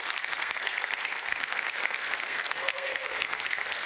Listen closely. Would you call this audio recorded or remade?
remade